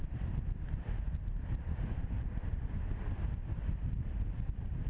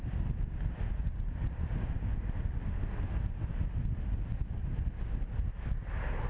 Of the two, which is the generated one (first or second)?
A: first